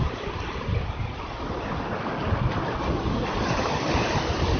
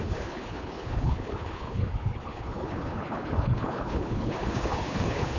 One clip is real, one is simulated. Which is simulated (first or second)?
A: second